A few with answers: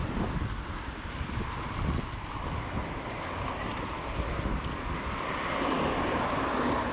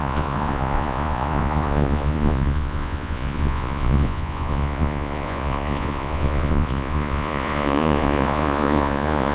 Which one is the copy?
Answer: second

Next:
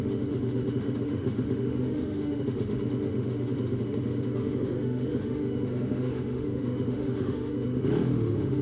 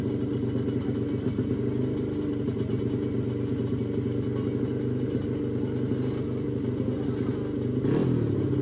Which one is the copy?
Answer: first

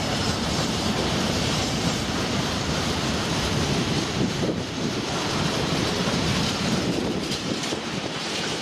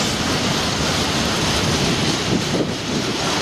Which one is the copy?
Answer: first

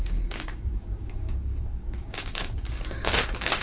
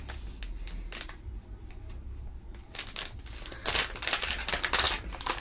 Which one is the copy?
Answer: first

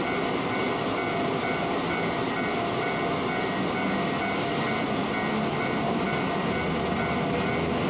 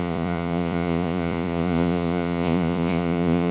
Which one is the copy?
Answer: second